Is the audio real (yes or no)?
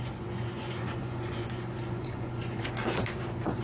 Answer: no